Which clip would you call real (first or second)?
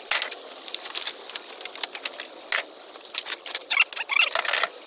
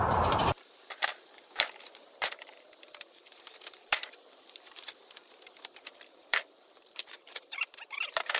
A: first